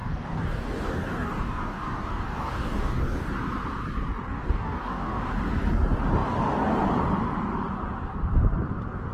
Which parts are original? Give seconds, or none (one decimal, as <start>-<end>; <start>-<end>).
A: 3.3-4.3; 5.3-9.1